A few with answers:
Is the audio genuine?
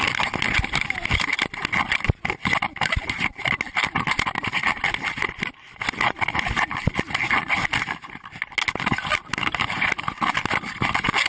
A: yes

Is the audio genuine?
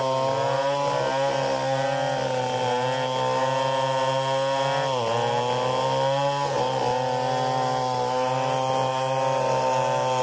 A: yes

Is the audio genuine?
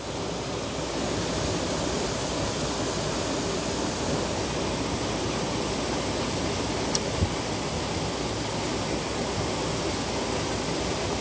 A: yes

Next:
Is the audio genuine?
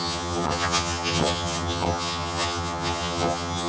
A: no